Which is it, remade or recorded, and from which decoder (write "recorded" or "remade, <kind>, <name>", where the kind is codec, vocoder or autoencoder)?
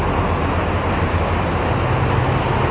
recorded